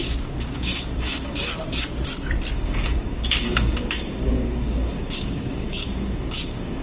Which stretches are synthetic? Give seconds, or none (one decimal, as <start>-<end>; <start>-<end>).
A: 0.0-1.5; 2.5-6.8